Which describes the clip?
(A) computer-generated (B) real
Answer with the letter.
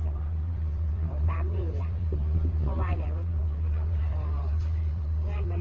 A